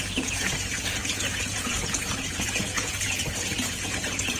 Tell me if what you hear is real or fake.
fake